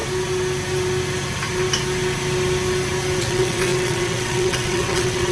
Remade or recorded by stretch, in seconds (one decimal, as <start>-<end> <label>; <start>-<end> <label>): 0.0-3.2 recorded; 3.2-5.3 remade